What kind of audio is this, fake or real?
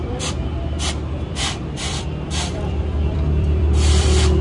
fake